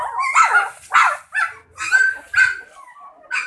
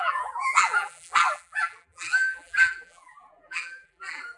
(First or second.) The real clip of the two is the first